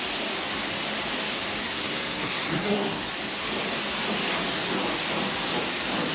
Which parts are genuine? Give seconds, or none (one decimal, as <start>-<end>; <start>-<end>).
0.0-1.6; 3.1-6.1